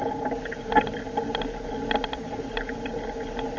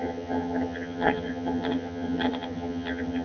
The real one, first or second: first